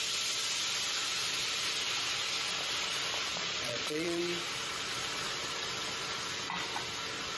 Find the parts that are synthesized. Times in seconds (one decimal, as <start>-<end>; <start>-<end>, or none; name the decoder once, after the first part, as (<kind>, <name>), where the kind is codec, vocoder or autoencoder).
3.3-4.2 (vocoder, Vocos)